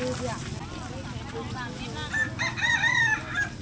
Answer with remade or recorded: recorded